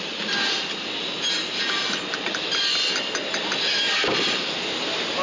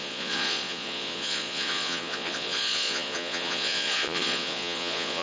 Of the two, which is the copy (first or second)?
second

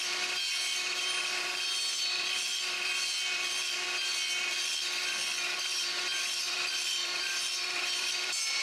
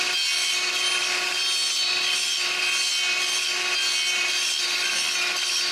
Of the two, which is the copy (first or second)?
first